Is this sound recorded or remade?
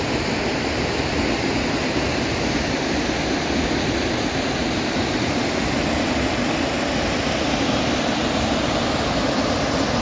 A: recorded